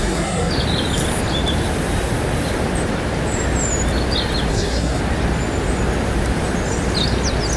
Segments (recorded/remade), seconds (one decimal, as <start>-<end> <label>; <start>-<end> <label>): 0.0-0.5 remade; 0.5-4.5 recorded; 4.5-5.0 remade; 5.0-7.6 recorded